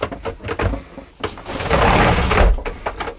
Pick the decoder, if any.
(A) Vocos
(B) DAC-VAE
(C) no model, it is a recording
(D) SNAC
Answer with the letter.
C